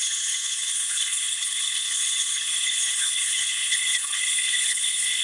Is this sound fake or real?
fake